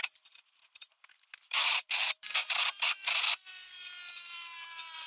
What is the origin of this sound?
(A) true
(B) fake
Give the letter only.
B